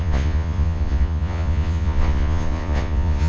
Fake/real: fake